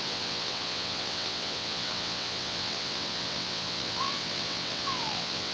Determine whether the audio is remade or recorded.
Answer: remade